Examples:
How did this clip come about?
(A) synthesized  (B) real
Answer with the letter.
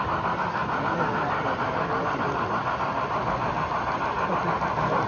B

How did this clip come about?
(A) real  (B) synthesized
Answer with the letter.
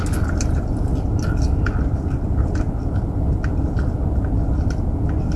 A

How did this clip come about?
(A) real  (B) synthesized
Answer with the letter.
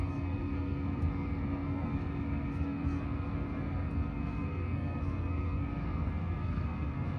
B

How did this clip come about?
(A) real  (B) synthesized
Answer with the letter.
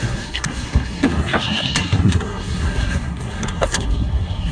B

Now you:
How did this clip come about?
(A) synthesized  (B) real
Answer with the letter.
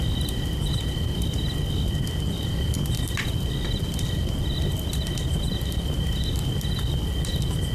B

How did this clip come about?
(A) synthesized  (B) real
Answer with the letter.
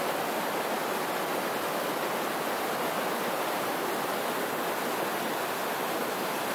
B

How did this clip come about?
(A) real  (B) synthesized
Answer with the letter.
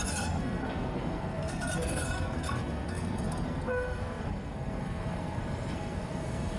B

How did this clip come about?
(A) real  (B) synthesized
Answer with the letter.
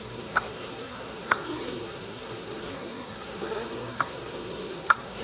B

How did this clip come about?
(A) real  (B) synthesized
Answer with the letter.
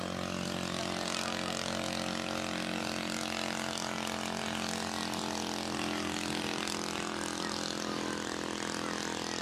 A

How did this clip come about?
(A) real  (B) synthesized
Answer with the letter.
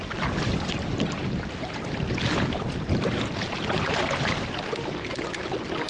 A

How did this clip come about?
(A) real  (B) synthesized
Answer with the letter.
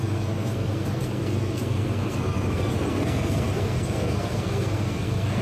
B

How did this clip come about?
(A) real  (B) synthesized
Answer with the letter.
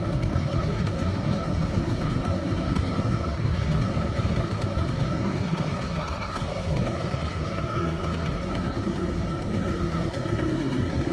B